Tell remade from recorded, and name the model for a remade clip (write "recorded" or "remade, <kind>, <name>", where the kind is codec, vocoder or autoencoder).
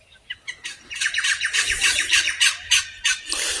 remade, vocoder, BigVGAN v2